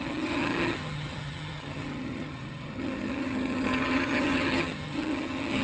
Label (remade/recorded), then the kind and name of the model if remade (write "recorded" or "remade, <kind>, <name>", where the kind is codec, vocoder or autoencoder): remade, vocoder, HiFi-GAN